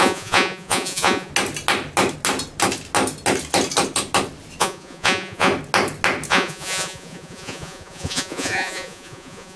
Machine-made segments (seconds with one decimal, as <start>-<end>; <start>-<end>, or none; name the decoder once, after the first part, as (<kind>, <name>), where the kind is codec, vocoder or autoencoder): 0.0-1.3 (vocoder, Vocos); 4.6-5.5; 6.3-9.6